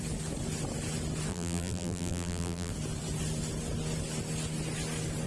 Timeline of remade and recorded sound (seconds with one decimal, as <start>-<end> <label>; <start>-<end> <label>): 0.0-1.3 recorded; 1.3-2.7 remade; 2.7-5.3 recorded